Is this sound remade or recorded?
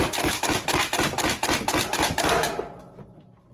recorded